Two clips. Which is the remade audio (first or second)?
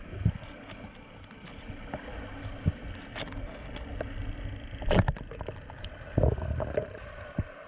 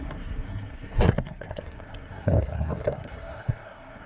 second